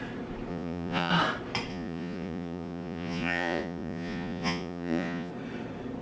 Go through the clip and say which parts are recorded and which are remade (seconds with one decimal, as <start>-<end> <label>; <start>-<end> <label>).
0.0-0.5 recorded; 0.5-1.1 remade; 1.1-1.7 recorded; 1.7-5.3 remade; 5.3-6.0 recorded